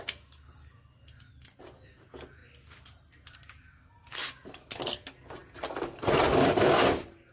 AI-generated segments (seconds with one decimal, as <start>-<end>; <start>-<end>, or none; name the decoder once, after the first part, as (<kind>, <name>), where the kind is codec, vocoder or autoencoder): none